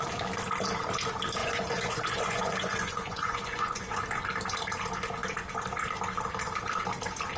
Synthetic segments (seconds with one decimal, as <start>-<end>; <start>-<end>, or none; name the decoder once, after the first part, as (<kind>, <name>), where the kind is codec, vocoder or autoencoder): 1.4-4.0 (vocoder, Vocos)